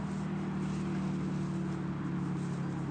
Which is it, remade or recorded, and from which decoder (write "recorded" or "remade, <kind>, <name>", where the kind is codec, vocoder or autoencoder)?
recorded